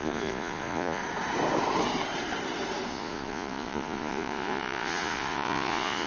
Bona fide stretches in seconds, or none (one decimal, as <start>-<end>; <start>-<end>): 1.0-2.9